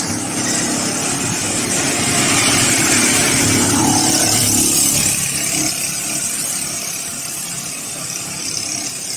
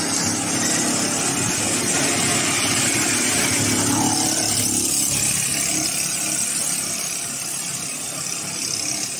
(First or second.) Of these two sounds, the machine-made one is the first